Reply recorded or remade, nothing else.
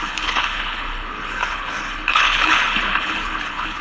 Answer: remade